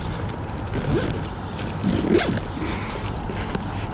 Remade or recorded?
recorded